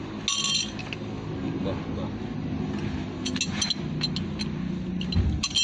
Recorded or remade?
recorded